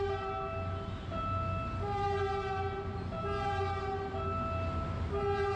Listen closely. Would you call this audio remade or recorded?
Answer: recorded